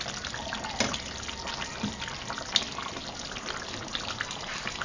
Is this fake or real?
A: real